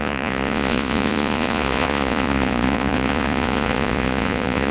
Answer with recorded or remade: remade